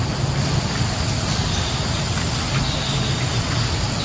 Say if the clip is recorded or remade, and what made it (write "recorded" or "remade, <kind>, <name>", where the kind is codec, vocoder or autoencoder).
recorded